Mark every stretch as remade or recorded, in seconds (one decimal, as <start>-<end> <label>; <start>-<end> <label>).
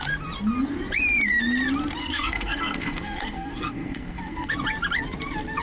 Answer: 0.0-2.0 recorded; 2.0-4.5 remade; 4.5-5.6 recorded